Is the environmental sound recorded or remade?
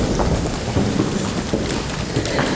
remade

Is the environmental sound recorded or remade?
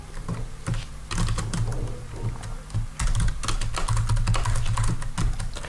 recorded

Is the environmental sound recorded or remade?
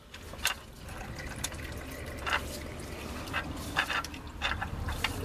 remade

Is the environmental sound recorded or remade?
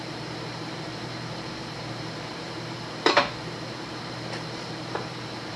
remade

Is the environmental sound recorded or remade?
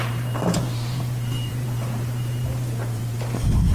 remade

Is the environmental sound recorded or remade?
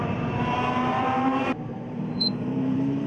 remade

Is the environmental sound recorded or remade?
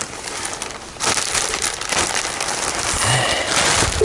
remade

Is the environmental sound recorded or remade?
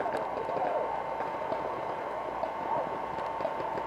remade